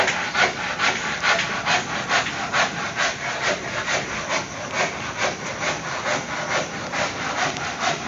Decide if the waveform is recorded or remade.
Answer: remade